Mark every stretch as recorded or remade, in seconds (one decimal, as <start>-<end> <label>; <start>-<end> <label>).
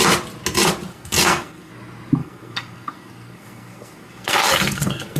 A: 0.0-0.9 recorded; 0.9-1.7 remade; 1.7-2.2 recorded; 2.2-5.2 remade